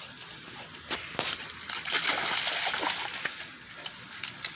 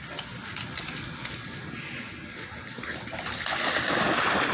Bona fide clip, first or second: second